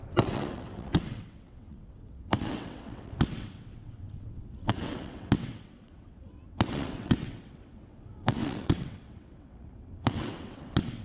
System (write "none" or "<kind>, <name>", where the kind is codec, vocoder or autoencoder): vocoder, WaveNeXt